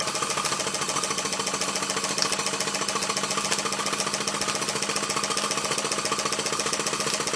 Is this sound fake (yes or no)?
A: no